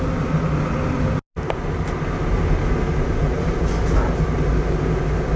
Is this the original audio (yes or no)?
yes